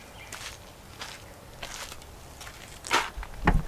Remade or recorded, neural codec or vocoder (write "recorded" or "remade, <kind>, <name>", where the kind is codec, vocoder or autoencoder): recorded